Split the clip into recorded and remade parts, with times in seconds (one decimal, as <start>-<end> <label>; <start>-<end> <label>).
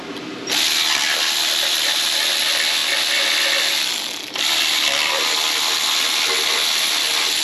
0.0-7.4 recorded